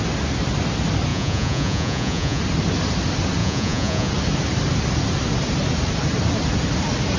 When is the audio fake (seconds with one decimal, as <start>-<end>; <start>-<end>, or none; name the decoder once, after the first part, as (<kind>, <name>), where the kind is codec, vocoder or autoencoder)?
1.1-2.4 (vocoder, Vocos); 3.4-4.1